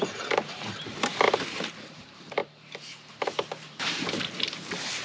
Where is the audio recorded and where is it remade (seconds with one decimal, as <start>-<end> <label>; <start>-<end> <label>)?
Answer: 0.0-5.0 remade